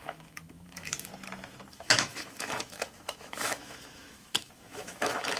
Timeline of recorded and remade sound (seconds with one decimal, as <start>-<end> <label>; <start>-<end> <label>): 0.0-1.1 remade; 1.1-1.7 recorded; 1.7-5.4 remade